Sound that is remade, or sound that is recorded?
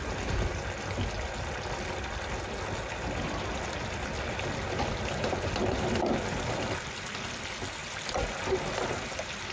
recorded